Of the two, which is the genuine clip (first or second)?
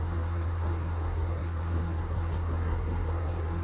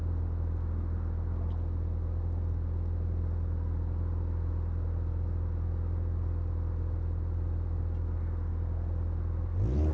second